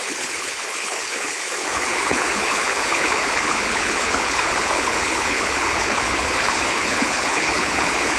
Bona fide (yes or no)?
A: no